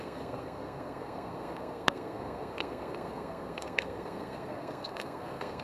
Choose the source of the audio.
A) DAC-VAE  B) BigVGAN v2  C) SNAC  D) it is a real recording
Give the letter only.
C